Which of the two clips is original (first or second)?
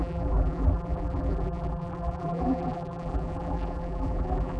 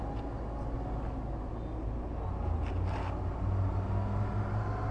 second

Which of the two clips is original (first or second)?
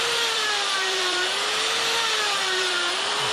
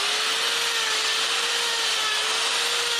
second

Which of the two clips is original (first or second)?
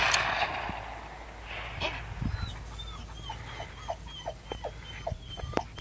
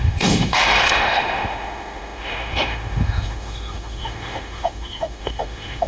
first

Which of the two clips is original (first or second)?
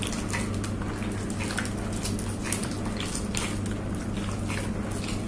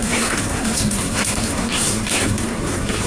first